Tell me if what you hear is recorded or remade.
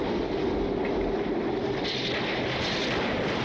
recorded